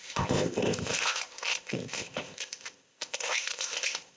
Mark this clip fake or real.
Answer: fake